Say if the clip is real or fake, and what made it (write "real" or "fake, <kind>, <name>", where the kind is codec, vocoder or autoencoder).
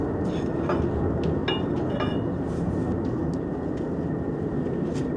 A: real